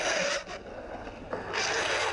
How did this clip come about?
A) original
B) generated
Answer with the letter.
A